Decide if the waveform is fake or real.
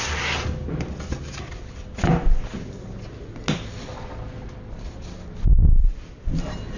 real